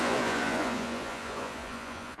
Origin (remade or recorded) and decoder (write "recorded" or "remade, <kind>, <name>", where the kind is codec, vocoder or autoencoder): remade, vocoder, Vocos